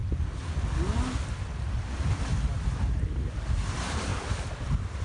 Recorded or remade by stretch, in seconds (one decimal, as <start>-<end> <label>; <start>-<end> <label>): 0.0-3.0 recorded; 3.0-4.1 remade; 4.1-4.6 recorded; 4.6-5.0 remade